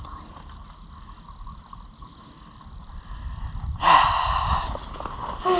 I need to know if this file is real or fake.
real